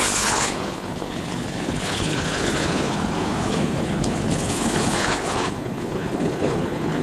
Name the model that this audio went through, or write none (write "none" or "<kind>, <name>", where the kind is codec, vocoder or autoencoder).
codec, HILCodec